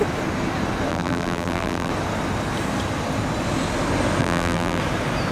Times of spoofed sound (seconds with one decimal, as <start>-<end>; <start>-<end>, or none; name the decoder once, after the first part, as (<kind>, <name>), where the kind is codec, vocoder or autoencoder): 0.9-1.9 (vocoder, BigVGAN v2); 4.2-4.8